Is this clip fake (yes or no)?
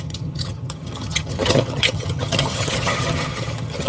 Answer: yes